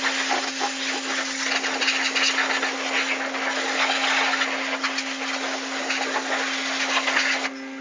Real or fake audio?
real